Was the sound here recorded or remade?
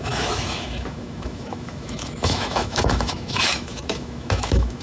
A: remade